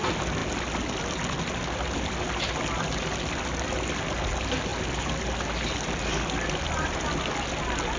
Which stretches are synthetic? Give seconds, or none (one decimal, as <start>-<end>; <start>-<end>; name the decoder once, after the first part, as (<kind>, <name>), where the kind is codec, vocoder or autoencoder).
none